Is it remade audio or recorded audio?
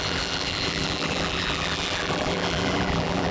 remade